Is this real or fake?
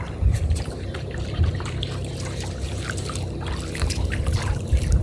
fake